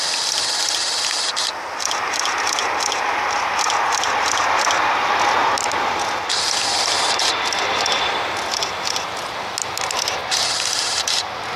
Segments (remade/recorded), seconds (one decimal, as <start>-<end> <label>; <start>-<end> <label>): 0.0-11.6 recorded